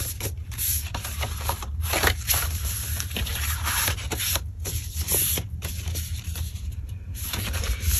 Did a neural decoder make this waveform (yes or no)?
yes